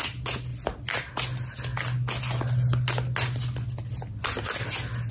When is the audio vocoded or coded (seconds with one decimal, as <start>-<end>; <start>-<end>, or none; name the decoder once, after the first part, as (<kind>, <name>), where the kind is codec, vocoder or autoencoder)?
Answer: none